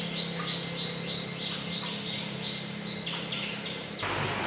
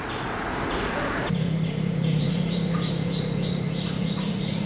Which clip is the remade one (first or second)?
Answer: second